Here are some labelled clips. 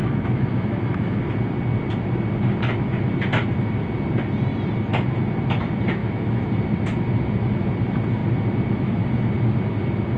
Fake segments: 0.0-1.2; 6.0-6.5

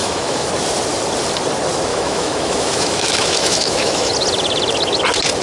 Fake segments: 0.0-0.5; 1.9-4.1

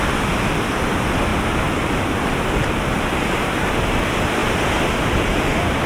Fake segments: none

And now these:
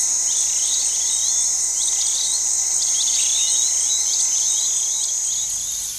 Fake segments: none